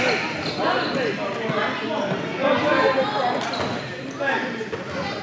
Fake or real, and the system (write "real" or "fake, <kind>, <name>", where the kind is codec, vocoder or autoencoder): real